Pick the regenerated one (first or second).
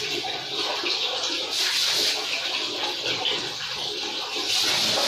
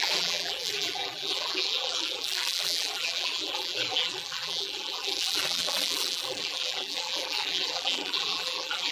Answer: second